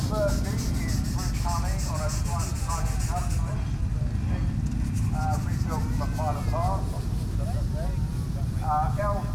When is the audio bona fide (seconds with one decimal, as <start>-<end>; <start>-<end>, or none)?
0.0-9.3